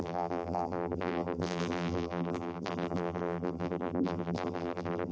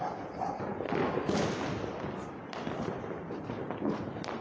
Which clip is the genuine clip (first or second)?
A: second